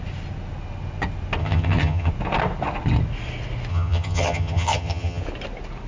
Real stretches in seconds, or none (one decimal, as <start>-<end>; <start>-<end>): 0.0-1.4; 2.1-3.7; 5.2-5.9